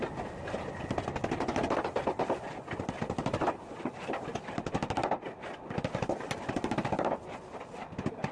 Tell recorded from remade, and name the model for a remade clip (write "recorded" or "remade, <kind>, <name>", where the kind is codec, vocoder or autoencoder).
recorded